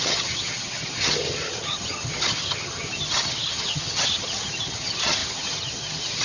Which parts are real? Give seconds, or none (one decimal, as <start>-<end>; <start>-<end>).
none